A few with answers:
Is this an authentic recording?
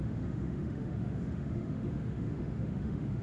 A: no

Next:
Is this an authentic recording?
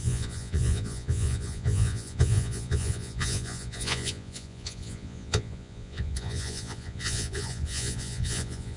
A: no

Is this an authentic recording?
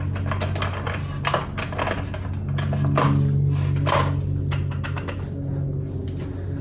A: yes